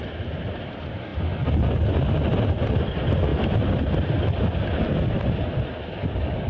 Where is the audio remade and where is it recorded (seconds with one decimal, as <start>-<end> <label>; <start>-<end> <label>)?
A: 0.0-6.5 recorded